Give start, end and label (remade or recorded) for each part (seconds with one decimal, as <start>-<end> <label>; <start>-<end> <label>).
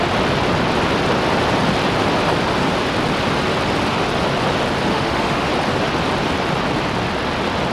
0.0-4.9 recorded; 4.9-5.5 remade; 5.5-7.7 recorded